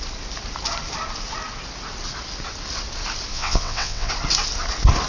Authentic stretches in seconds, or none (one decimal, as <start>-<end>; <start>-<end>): 0.0-3.3; 4.1-5.1